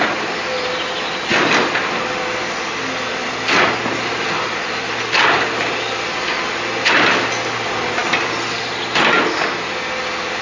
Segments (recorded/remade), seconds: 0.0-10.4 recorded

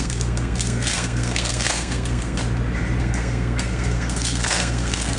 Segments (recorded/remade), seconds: 0.0-2.4 remade; 2.4-3.0 recorded; 3.0-5.2 remade

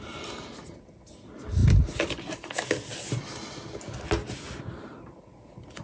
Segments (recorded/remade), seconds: 0.0-5.8 recorded

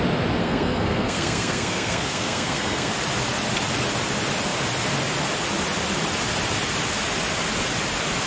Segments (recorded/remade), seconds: 0.0-0.4 recorded; 0.4-2.9 remade; 2.9-8.3 recorded